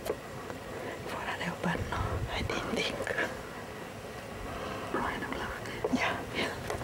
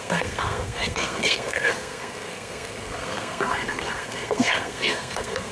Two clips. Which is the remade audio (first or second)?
second